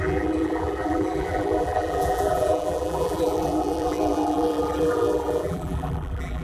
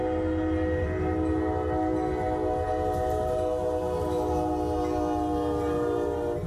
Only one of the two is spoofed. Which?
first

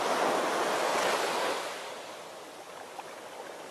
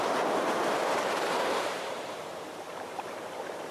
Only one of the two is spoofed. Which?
second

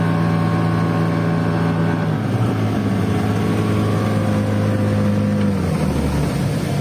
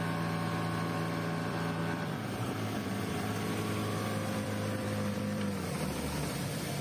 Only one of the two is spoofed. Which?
second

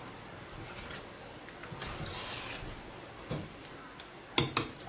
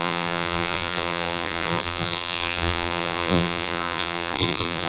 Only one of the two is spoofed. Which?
second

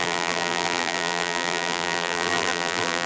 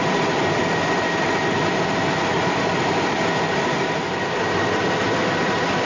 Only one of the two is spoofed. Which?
first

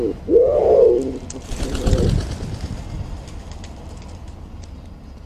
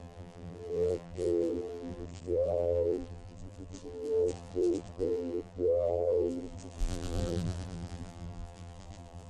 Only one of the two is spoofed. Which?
second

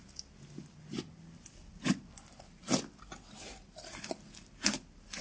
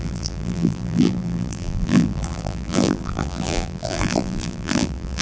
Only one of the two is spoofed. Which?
second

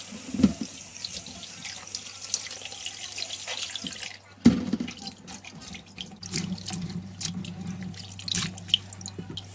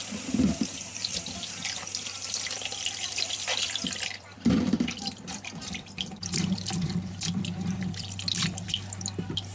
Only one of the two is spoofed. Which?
second